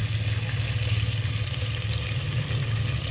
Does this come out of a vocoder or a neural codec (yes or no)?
no